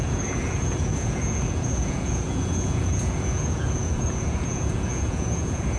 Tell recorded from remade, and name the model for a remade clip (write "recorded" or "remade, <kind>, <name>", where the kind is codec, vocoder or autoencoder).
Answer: remade, vocoder, Vocos